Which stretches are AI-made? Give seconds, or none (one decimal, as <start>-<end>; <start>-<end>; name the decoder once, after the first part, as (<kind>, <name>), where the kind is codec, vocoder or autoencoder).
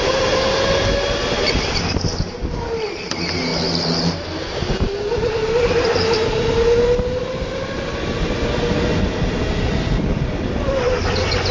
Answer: none